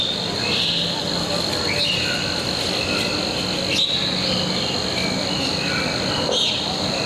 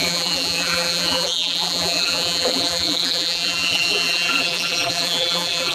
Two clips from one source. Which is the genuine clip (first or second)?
first